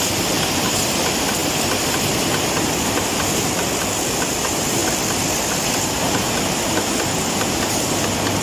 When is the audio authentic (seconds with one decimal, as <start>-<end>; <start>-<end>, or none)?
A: 0.0-8.4